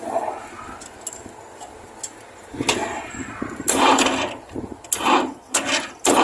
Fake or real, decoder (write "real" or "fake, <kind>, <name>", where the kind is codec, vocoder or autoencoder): real